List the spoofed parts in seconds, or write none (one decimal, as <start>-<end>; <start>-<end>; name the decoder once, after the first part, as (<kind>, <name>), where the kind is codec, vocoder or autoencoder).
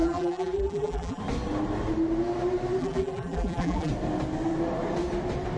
0.0-1.2 (vocoder, BigVGAN v2); 2.8-3.9